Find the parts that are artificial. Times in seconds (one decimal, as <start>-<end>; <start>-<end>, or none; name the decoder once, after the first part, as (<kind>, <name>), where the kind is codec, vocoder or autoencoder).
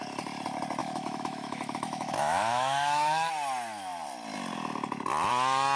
0.8-3.3 (autoencoder, DAC-VAE)